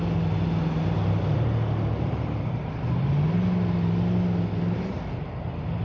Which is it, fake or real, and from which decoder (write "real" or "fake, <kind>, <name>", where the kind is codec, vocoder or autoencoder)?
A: real